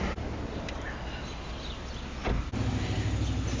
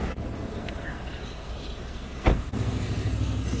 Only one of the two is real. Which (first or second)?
first